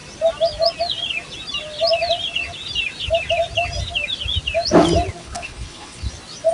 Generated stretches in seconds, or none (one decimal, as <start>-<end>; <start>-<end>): 5.2-6.1